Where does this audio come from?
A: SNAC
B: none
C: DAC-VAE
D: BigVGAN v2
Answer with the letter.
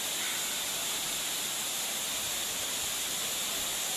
B